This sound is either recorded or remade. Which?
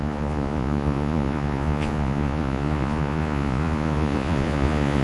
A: remade